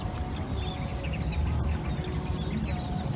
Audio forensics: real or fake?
real